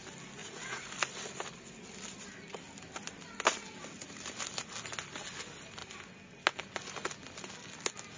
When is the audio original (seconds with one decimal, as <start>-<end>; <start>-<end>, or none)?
0.0-0.4; 0.9-8.2